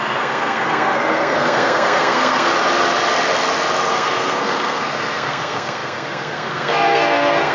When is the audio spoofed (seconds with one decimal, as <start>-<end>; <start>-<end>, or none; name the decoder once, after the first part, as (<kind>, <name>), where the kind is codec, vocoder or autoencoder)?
0.0-2.5 (codec, SNAC); 3.9-7.5